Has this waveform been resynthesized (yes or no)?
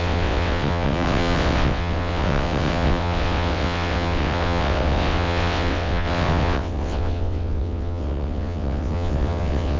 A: yes